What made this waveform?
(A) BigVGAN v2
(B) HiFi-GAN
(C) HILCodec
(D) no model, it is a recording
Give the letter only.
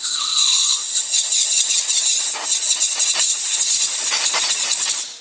A